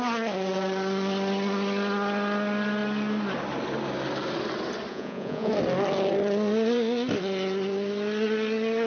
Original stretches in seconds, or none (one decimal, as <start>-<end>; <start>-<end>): 0.0-4.9; 5.5-8.9